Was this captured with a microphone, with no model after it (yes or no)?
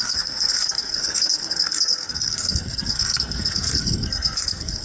no